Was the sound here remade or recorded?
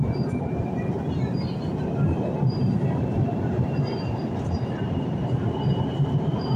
remade